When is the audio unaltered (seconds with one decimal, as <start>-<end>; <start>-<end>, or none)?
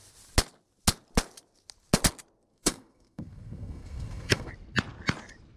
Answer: 0.0-2.5; 4.5-5.6